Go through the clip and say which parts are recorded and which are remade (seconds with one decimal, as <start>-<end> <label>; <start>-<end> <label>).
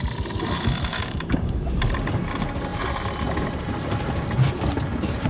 0.0-0.9 recorded; 0.9-1.6 remade; 1.6-5.3 recorded